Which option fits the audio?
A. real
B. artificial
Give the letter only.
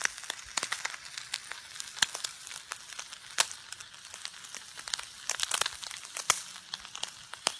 A